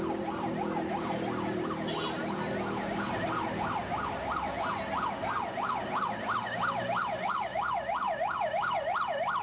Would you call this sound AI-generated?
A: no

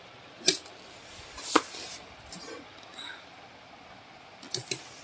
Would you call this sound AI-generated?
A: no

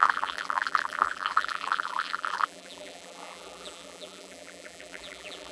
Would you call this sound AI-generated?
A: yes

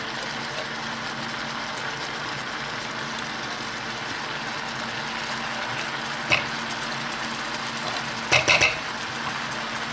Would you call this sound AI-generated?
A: no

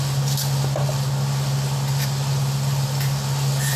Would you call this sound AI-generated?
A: no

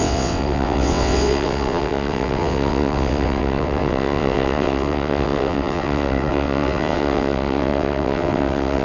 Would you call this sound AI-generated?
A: yes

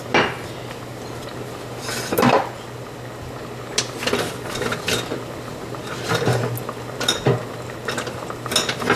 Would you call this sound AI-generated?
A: no